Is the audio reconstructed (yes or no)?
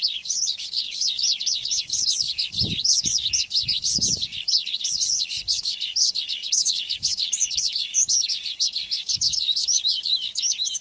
yes